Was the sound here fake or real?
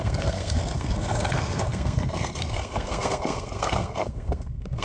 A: fake